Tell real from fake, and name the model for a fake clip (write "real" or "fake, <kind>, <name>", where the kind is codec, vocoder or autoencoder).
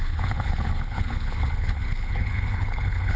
fake, codec, HILCodec